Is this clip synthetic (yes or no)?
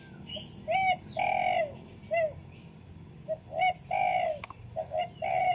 no